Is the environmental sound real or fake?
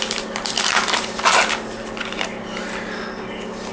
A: real